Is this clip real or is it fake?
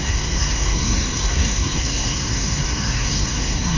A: fake